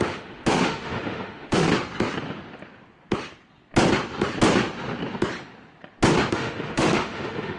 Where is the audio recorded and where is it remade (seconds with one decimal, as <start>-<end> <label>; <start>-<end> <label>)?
0.0-1.7 remade; 1.7-6.3 recorded; 6.3-7.6 remade